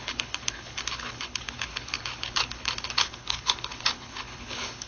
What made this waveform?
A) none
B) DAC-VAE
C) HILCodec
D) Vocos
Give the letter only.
C